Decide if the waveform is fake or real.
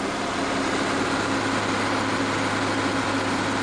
real